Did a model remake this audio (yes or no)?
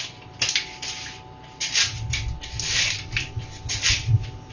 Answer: no